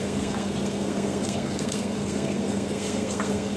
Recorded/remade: remade